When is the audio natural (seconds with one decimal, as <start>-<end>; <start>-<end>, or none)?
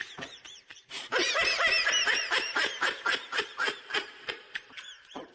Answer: none